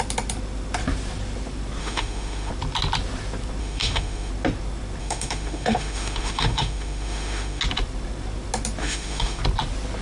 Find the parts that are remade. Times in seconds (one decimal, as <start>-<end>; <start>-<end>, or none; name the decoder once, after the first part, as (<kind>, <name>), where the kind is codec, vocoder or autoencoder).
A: 1.8-2.5 (autoencoder, DAC-VAE); 3.6-4.3; 5.0-7.6; 8.8-9.4